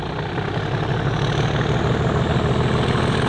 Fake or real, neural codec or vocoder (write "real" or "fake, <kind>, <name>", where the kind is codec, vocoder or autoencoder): real